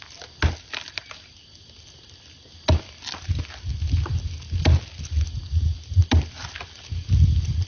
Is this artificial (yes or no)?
no